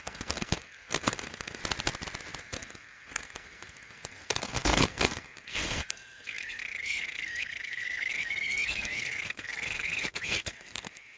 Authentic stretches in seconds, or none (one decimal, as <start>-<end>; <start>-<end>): 1.6-2.4